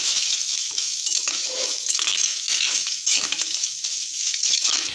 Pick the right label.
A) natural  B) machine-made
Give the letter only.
B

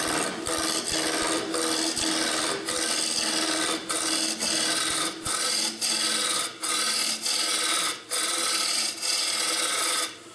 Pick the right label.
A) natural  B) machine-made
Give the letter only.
A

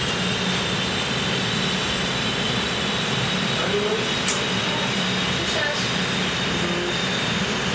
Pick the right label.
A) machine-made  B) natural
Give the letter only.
B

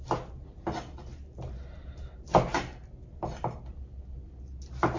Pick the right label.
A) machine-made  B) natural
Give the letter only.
B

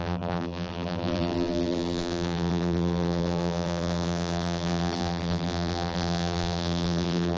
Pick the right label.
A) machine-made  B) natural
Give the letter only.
A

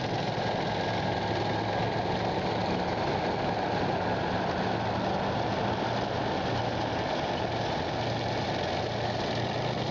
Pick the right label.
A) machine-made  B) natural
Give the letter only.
B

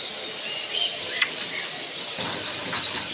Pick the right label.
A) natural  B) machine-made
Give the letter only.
A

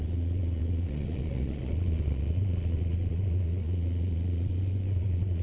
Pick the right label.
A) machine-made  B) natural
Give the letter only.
A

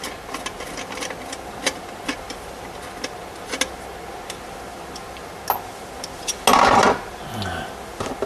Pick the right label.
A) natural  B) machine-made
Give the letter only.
A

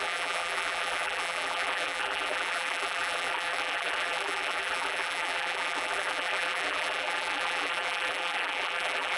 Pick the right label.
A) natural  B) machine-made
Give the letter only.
B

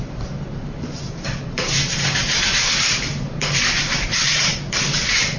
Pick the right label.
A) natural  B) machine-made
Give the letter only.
B